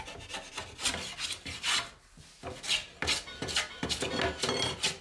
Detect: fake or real real